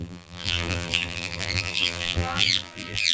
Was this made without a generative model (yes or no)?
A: no